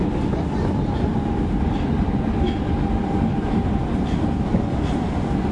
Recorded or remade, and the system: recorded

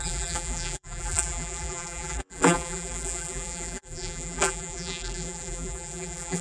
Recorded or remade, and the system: remade, vocoder, BigVGAN v2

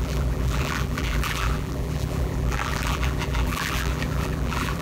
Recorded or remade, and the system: remade, vocoder, BigVGAN v2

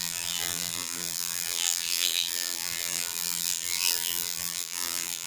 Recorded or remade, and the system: remade, vocoder, BigVGAN v2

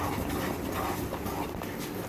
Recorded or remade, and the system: remade, vocoder, BigVGAN v2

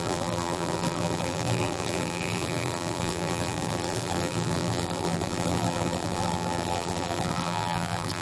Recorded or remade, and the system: remade, vocoder, BigVGAN v2